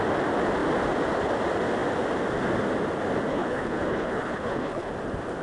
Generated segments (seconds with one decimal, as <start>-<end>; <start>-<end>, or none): 3.3-4.9

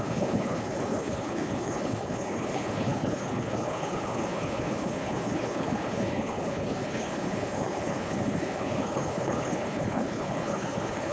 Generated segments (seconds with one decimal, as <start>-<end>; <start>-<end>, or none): 0.0-11.1

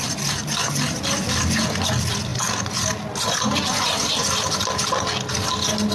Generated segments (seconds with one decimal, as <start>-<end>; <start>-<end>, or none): none

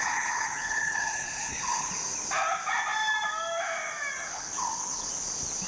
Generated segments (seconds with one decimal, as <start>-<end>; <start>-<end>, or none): 0.0-1.9; 4.3-5.1

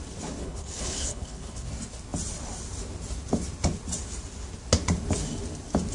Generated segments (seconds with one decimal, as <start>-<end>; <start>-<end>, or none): 0.4-1.7

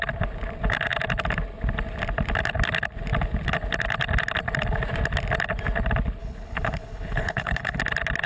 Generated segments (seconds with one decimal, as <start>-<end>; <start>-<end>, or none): 6.2-7.8